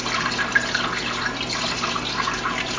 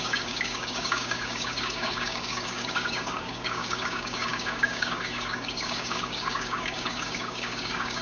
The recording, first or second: first